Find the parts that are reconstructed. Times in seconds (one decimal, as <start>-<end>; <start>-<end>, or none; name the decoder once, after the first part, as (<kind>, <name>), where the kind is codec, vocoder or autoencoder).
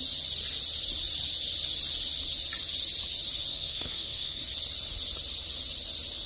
3.5-4.4 (codec, SNAC)